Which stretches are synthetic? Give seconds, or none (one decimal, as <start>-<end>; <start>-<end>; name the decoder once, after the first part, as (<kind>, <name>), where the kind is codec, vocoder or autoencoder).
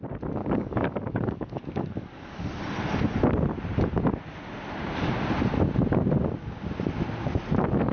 0.4-2.6 (codec, DAC)